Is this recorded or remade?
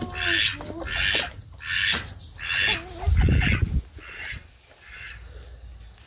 recorded